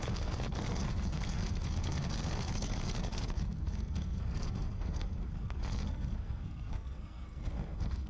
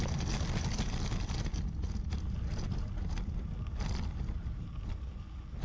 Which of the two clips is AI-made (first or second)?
first